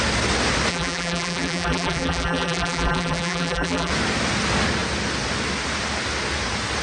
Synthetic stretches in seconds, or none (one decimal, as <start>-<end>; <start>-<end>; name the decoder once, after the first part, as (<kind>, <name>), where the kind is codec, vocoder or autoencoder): 0.7-3.9 (vocoder, BigVGAN v2)